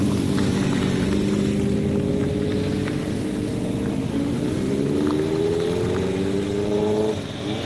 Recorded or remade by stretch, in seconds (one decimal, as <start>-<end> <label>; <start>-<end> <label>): 0.0-4.1 recorded; 4.1-4.7 remade; 4.7-7.7 recorded